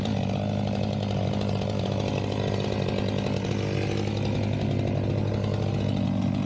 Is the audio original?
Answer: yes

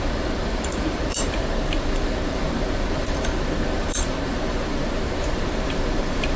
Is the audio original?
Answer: no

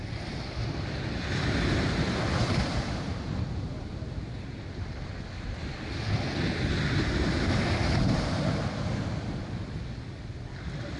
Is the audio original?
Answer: yes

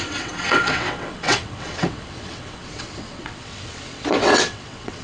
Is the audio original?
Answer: no